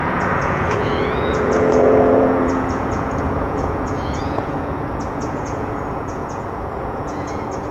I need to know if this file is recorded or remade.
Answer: remade